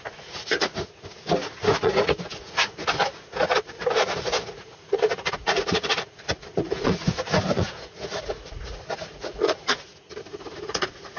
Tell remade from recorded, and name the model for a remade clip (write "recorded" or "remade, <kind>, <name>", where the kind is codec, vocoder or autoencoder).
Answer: remade, vocoder, Vocos